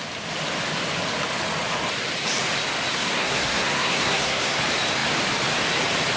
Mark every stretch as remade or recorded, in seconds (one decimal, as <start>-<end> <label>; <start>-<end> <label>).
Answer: 0.0-2.9 recorded; 2.9-4.6 remade; 4.6-6.2 recorded